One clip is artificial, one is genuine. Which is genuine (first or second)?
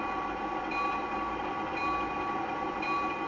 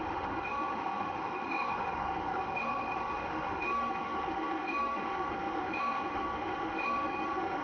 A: first